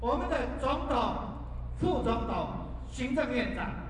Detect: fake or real real